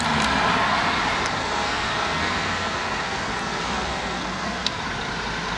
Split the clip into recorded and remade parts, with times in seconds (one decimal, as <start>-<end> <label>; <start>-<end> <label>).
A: 0.0-1.4 recorded; 1.4-4.8 remade; 4.8-5.6 recorded